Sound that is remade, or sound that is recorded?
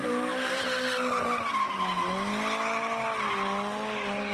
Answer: recorded